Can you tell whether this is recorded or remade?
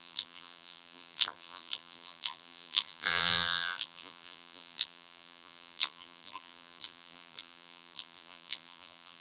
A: remade